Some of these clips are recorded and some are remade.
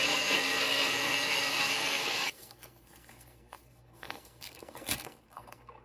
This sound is remade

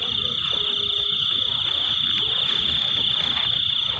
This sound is recorded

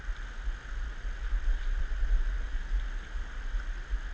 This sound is recorded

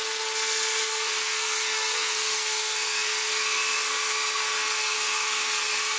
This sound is remade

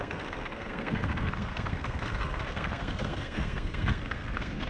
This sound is remade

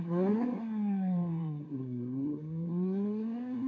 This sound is remade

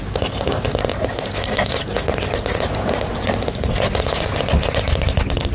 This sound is recorded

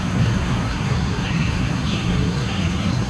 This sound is remade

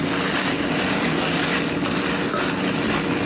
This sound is recorded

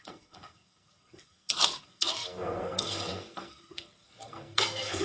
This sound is remade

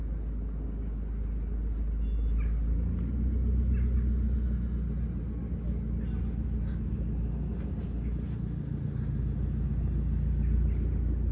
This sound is recorded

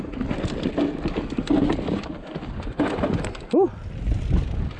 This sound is recorded